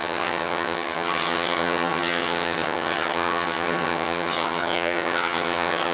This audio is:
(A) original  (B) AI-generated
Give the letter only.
B